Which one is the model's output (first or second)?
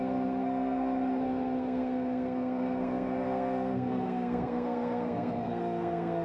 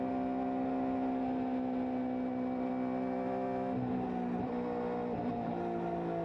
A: first